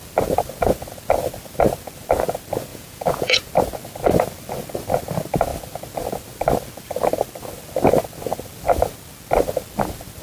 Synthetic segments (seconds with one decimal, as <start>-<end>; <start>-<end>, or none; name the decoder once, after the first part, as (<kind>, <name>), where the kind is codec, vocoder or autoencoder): 2.7-3.5 (vocoder, Vocos)